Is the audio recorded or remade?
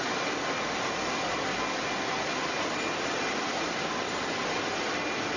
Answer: recorded